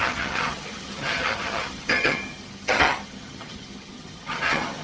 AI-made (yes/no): yes